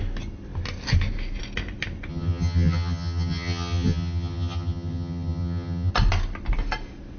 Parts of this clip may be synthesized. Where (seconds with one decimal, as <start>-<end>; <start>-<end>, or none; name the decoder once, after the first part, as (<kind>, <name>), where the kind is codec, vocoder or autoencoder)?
2.1-5.9 (vocoder, HiFi-GAN)